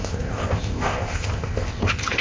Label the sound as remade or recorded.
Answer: remade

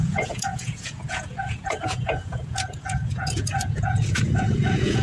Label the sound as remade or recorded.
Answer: remade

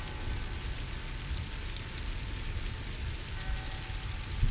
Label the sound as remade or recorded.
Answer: recorded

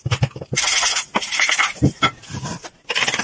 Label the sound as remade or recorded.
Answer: recorded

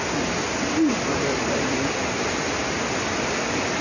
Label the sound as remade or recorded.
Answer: recorded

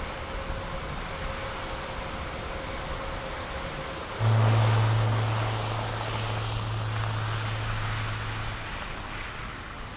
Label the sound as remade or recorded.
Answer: recorded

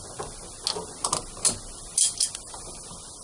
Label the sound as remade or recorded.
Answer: recorded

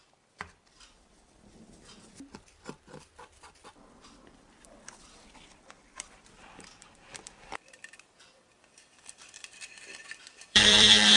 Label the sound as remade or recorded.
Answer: remade